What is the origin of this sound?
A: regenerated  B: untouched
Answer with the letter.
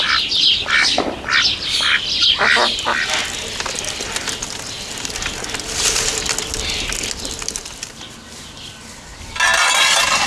B